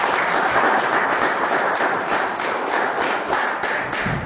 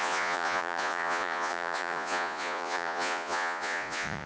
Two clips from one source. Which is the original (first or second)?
first